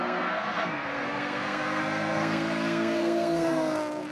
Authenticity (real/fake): fake